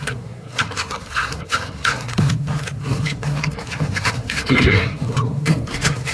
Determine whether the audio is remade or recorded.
remade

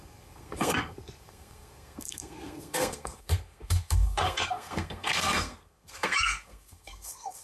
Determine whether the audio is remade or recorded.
remade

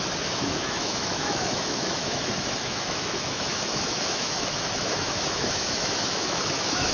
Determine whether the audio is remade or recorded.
remade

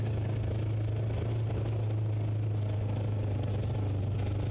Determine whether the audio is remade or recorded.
recorded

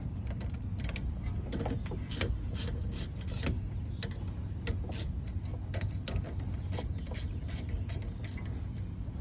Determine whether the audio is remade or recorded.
recorded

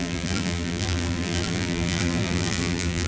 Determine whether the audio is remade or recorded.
remade